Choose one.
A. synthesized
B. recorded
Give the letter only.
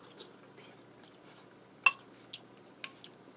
B